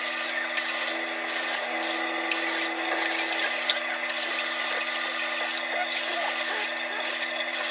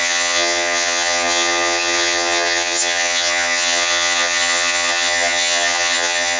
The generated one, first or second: second